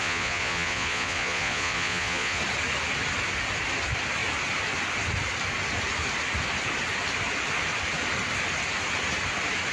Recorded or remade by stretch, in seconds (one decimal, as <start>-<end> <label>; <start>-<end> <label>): 0.0-2.4 remade; 2.4-9.7 recorded